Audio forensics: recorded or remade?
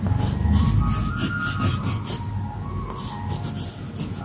recorded